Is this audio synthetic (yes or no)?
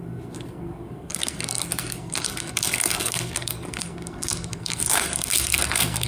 yes